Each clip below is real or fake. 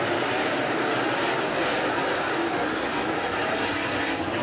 real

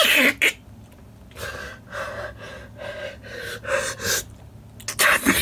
real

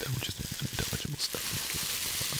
real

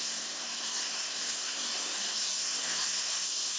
fake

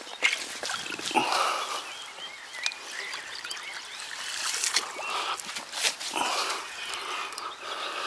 real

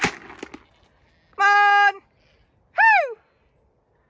real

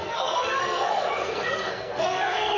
fake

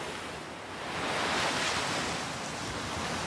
real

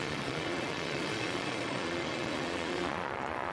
fake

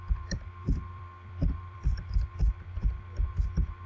fake